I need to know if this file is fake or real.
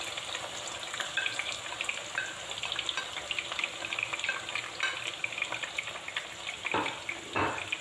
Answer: real